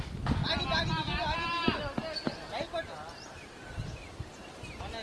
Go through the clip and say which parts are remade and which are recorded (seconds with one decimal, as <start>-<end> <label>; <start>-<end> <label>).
0.0-5.0 recorded